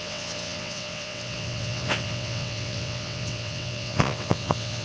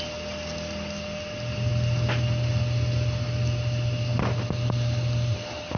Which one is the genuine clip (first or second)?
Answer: second